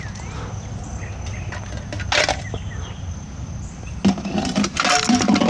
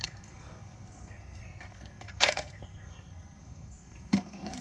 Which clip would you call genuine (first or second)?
first